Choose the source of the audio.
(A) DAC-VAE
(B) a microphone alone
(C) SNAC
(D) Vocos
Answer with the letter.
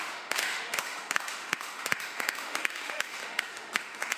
A